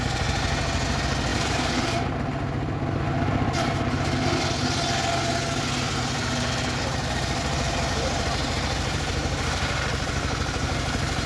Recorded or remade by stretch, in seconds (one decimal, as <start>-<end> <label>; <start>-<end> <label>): 0.0-1.3 recorded; 1.3-4.4 remade; 4.4-6.2 recorded; 6.2-11.3 remade